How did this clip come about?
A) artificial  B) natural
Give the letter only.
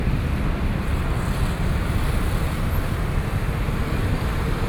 B